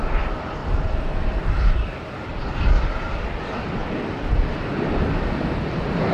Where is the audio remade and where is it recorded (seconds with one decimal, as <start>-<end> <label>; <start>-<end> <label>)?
0.0-0.6 recorded; 0.6-2.9 remade; 2.9-3.8 recorded; 3.8-4.5 remade; 4.5-6.1 recorded